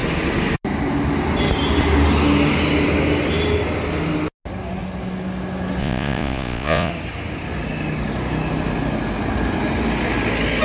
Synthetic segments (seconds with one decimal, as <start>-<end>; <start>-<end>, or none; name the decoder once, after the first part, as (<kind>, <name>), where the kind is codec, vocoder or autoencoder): 5.8-6.9 (vocoder, Vocos)